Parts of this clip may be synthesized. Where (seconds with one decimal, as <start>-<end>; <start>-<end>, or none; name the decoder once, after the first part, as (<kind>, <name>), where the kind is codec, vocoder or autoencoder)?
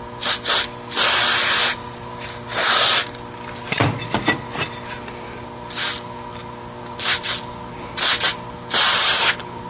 1.6-2.6 (vocoder, BigVGAN v2)